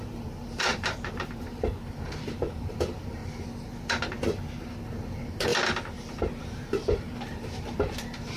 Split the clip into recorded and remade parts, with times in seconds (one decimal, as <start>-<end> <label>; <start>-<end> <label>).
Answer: 0.0-3.2 remade; 3.2-4.6 recorded; 4.6-5.5 remade; 5.5-6.4 recorded; 6.4-8.4 remade